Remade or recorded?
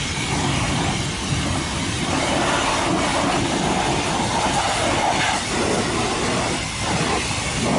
recorded